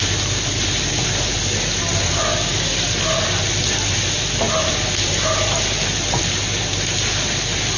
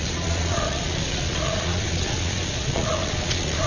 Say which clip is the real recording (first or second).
first